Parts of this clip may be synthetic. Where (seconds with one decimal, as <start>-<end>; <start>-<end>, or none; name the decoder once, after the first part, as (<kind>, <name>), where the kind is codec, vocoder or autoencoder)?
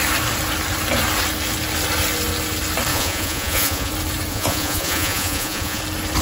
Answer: 2.9-3.9 (vocoder, Vocos); 4.3-5.8